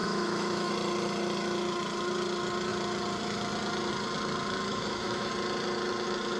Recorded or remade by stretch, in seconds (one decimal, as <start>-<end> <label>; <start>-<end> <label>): 0.0-0.7 remade; 0.7-4.7 recorded; 4.7-5.3 remade; 5.3-6.4 recorded